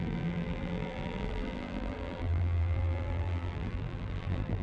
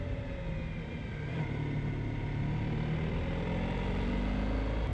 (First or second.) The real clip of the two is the second